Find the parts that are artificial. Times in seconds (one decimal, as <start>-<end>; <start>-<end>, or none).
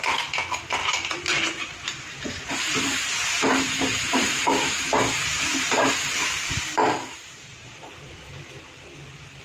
0.8-5.9; 6.8-9.4